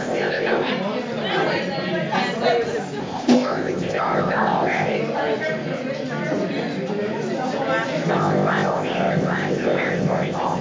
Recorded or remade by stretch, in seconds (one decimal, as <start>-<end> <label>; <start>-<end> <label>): 0.0-0.7 remade; 0.7-3.0 recorded; 3.0-5.0 remade; 5.0-8.1 recorded; 8.1-10.6 remade